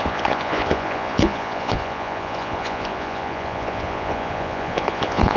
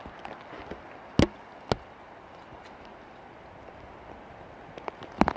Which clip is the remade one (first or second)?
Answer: first